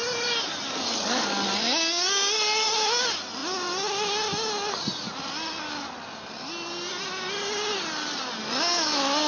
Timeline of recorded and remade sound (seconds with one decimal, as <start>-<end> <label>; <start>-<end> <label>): 0.0-9.3 recorded